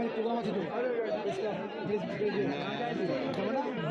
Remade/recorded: recorded